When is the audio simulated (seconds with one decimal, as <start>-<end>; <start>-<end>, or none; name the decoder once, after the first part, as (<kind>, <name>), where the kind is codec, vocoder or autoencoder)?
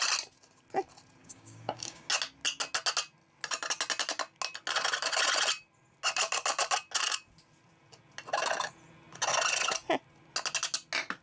1.2-2.1 (codec, DAC)